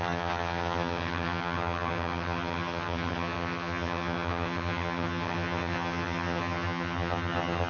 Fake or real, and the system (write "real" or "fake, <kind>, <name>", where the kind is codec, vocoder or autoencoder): fake, vocoder, HiFi-GAN